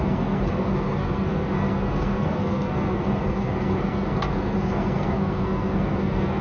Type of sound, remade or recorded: remade